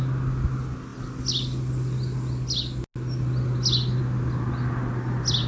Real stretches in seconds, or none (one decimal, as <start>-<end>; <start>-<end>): 0.0-5.5